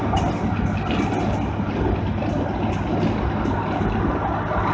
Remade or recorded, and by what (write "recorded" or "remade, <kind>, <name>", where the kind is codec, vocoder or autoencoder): recorded